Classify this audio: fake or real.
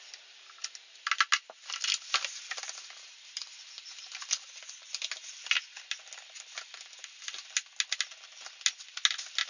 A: real